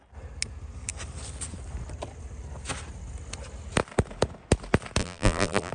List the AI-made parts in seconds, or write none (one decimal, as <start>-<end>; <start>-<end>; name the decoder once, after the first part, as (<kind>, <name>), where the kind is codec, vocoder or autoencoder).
5.0-5.7 (vocoder, BigVGAN v2)